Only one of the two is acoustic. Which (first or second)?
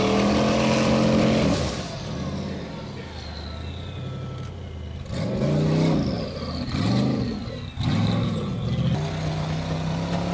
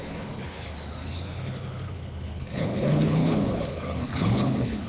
first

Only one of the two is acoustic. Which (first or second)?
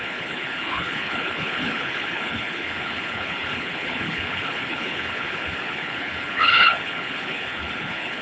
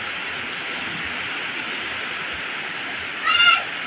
second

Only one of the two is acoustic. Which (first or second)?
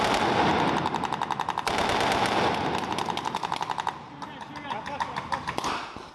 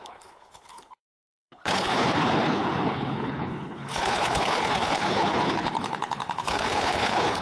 first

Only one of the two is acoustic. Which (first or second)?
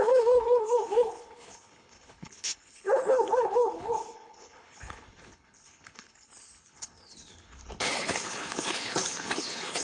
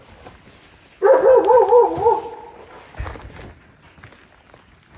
second